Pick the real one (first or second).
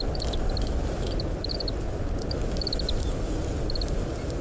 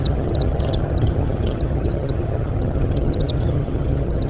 first